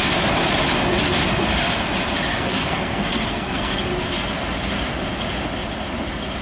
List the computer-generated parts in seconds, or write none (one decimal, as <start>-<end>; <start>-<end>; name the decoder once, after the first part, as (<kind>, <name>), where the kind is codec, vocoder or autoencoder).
2.3-3.8 (codec, SNAC)